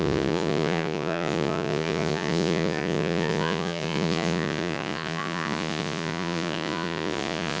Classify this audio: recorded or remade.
remade